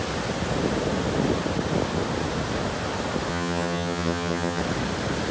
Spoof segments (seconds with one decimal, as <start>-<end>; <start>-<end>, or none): 3.3-4.6